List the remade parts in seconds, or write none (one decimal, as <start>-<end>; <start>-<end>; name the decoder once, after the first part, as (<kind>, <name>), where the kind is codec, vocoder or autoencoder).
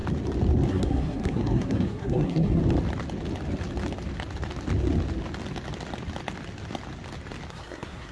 0.7-2.6 (codec, SNAC); 7.5-8.1